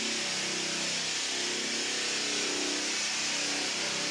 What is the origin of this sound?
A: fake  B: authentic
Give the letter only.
B